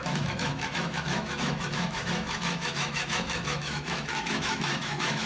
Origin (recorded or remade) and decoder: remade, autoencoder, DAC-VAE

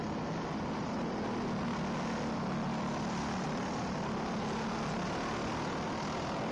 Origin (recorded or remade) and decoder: recorded